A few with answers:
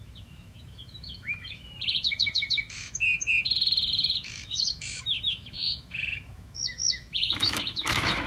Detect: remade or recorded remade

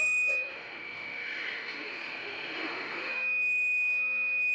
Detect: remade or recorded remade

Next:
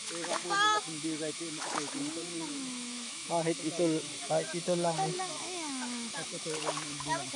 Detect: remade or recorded remade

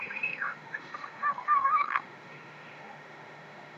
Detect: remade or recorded remade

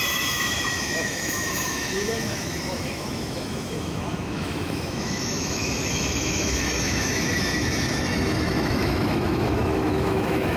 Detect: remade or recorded remade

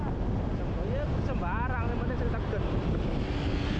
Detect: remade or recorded recorded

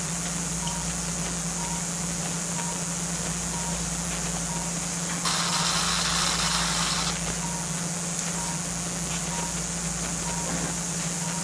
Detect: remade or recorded recorded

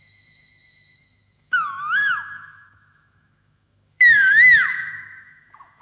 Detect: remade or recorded remade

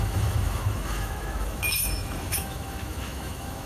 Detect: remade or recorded remade